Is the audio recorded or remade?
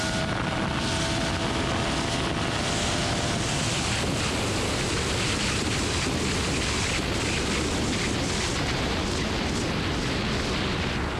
recorded